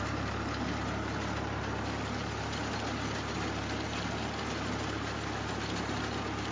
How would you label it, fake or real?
real